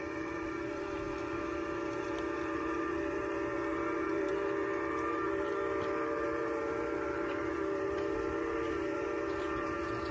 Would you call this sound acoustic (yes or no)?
no